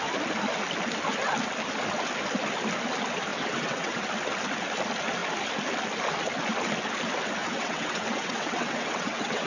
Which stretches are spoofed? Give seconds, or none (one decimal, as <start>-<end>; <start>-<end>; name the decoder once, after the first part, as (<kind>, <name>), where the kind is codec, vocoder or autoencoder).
3.3-4.0 (vocoder, WaveNeXt); 7.4-9.5